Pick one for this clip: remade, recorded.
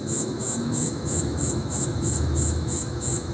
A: remade